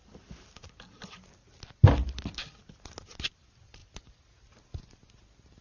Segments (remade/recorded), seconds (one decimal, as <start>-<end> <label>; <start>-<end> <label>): 0.0-5.6 recorded